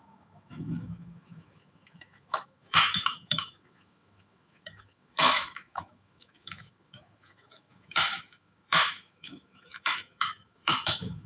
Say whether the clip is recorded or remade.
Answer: remade